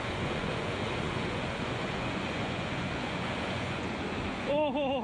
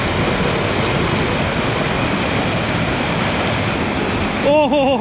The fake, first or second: first